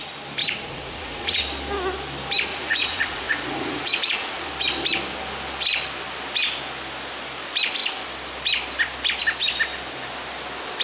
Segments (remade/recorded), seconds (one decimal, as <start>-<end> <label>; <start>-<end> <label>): 0.0-0.4 recorded; 0.4-1.4 remade; 1.4-2.5 recorded; 2.5-4.5 remade; 4.5-10.8 recorded